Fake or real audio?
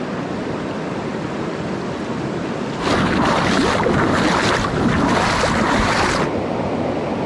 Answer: real